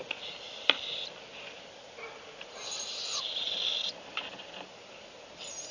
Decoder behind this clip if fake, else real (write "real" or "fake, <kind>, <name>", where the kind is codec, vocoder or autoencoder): real